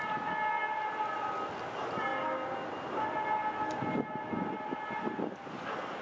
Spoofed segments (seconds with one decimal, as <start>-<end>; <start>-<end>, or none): none